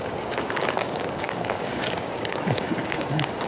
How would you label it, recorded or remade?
remade